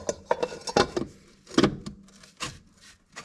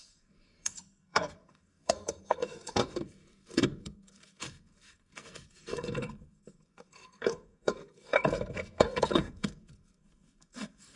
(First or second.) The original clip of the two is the first